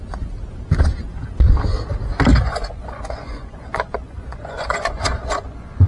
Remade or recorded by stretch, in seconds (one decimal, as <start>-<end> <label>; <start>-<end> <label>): 0.0-2.3 recorded; 2.3-5.9 remade